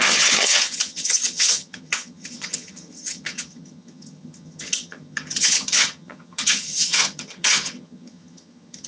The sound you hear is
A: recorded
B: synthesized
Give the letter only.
B